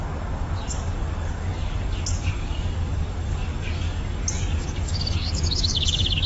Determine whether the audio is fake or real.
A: fake